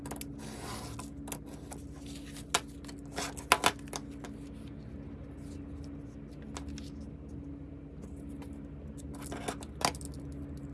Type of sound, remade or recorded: recorded